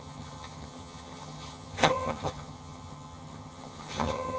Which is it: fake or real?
fake